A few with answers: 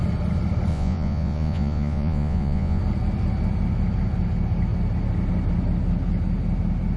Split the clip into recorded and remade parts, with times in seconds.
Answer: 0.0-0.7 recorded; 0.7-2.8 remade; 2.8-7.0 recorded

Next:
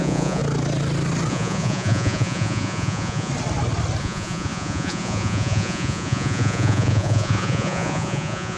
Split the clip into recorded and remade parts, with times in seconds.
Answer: 0.0-0.4 remade; 0.4-1.3 recorded; 1.3-3.3 remade; 3.3-4.0 recorded; 4.0-8.6 remade

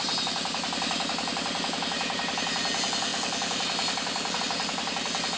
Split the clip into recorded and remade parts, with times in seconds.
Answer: 0.0-5.4 recorded

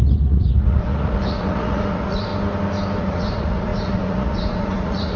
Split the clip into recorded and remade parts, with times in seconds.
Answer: 0.0-2.3 remade; 2.3-3.0 recorded; 3.0-5.2 remade